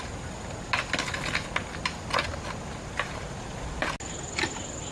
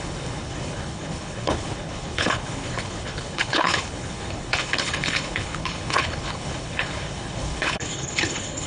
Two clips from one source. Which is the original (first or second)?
first